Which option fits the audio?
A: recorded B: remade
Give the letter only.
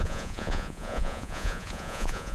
B